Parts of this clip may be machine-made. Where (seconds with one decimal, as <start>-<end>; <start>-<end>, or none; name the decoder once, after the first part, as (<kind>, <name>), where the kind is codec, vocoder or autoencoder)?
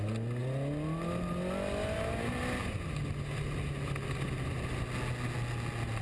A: none